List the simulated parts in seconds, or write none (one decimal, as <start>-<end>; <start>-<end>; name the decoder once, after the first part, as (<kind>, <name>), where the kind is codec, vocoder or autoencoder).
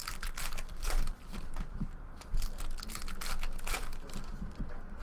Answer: 0.0-2.3 (vocoder, BigVGAN v2); 3.8-4.3